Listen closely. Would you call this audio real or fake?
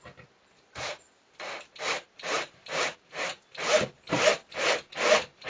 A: real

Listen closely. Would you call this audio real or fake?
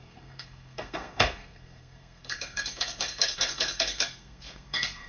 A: fake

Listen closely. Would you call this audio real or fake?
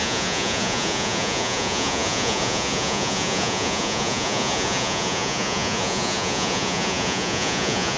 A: fake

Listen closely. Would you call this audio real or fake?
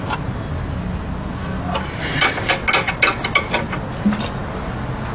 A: real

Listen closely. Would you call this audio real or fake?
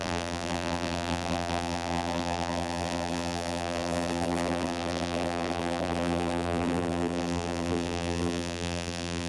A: fake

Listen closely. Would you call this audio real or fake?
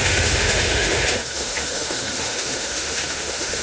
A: fake